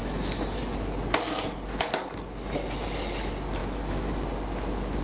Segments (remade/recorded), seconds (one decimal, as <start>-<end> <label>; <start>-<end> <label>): 0.0-0.6 remade; 0.6-3.6 recorded; 3.6-4.1 remade; 4.1-5.0 recorded